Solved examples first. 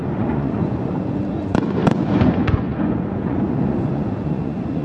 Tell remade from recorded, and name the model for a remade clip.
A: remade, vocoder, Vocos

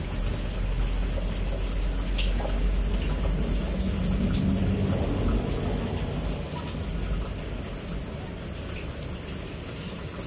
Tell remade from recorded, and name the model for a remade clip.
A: recorded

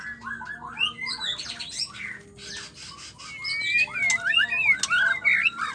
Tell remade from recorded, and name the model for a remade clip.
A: recorded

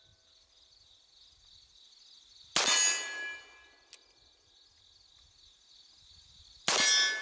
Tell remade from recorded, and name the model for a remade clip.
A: recorded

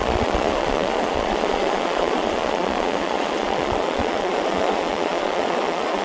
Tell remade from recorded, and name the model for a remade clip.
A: remade, vocoder, Vocos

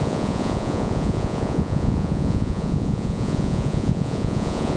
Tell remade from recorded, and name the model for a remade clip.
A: remade, vocoder, Vocos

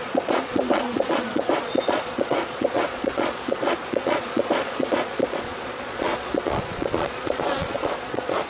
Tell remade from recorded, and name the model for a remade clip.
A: remade, vocoder, Vocos